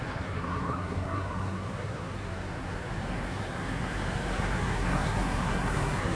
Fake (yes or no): yes